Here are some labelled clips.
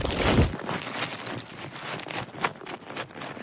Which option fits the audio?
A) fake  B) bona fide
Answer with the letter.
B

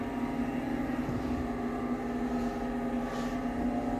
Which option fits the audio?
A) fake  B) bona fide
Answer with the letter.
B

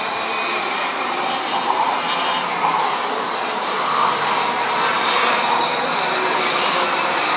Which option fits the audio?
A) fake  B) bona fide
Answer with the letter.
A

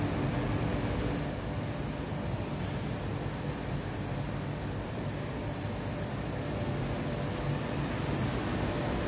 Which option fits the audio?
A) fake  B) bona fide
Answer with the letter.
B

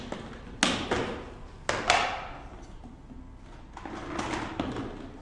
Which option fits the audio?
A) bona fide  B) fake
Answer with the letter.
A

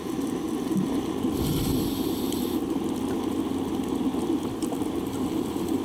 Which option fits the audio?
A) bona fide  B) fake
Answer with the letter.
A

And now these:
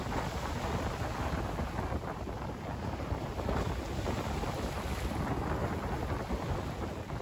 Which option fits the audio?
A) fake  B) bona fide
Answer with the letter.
B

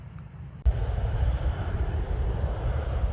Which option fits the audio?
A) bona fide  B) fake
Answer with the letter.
B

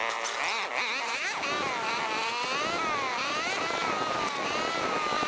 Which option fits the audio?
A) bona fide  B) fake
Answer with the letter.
A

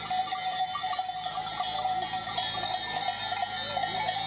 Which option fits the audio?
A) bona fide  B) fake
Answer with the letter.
A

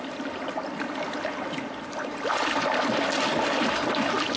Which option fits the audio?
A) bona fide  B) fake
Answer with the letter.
A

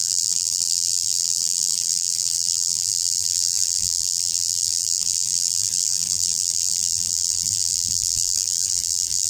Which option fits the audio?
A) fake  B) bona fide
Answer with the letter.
A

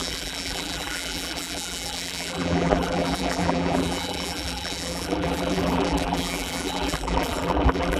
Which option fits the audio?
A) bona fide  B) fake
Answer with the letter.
B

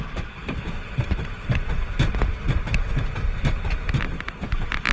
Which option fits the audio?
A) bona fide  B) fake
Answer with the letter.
A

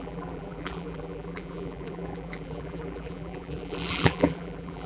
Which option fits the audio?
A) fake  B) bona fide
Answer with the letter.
A